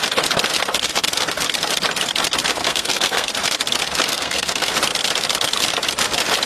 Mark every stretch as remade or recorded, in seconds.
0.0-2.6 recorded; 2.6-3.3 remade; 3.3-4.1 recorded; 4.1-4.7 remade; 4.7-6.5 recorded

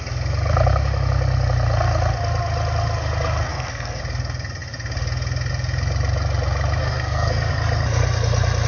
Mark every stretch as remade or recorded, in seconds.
0.0-3.5 recorded; 3.5-4.0 remade; 4.0-6.8 recorded; 6.8-7.5 remade; 7.5-8.7 recorded

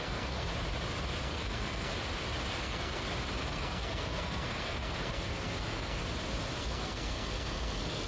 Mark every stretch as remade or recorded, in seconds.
0.0-0.5 remade; 0.5-1.2 recorded; 1.2-1.9 remade; 1.9-2.6 recorded; 2.6-3.0 remade; 3.0-3.5 recorded; 3.5-6.0 remade; 6.0-6.6 recorded; 6.6-8.1 remade

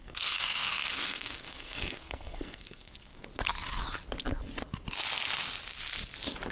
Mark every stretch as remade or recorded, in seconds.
0.0-3.3 remade; 3.3-6.5 recorded

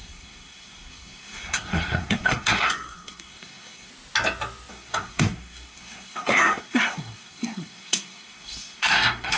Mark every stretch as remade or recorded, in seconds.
0.0-3.9 remade; 3.9-4.7 recorded; 4.7-9.4 remade

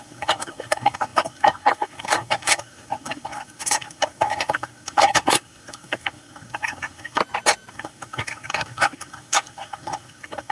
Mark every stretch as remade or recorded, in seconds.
0.0-7.2 remade; 7.2-7.7 recorded; 7.7-10.5 remade

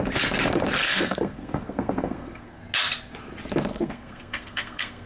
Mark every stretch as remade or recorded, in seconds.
0.0-0.8 recorded; 0.8-2.6 remade; 2.6-3.7 recorded; 3.7-5.1 remade

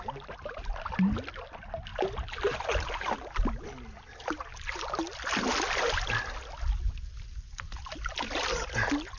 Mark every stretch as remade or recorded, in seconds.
0.0-9.2 recorded